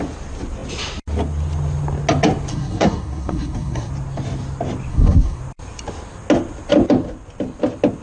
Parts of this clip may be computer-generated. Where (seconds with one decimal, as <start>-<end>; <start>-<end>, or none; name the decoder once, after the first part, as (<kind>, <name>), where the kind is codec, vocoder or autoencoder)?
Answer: 2.5-3.9 (codec, SNAC); 4.9-5.4